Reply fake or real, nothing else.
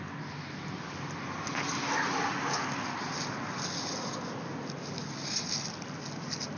real